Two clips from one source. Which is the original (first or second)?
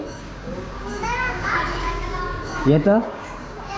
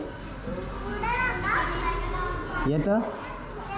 second